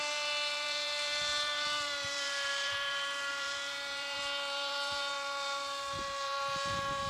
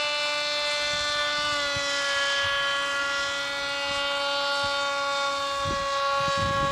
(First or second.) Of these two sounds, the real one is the second